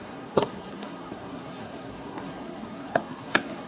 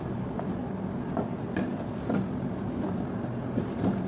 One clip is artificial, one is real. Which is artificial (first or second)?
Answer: first